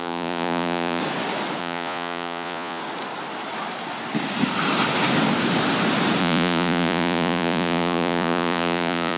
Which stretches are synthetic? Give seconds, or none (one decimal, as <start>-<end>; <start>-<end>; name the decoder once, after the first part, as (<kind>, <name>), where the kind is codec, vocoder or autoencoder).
0.0-1.0 (vocoder, Vocos); 1.6-2.8; 6.2-9.2